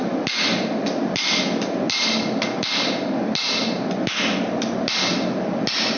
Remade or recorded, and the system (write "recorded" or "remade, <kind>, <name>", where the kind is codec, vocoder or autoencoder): recorded